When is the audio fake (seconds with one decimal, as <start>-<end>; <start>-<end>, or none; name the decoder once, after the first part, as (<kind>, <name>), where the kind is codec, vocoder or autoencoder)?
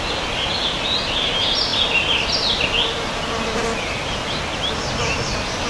none